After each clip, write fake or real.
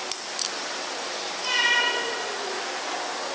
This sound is real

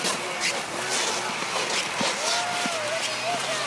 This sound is real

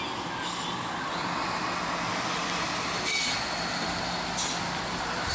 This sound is real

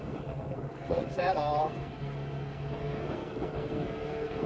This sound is fake